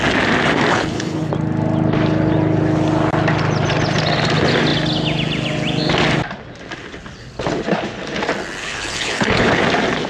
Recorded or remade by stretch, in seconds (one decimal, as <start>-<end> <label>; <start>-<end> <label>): 0.0-0.7 recorded; 0.7-1.3 remade; 1.3-8.6 recorded; 8.6-9.6 remade; 9.6-10.1 recorded